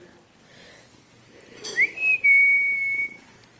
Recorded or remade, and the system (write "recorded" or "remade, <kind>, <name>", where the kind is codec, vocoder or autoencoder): recorded